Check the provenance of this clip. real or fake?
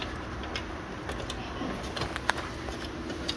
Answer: real